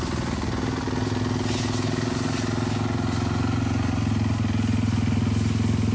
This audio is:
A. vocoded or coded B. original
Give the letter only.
B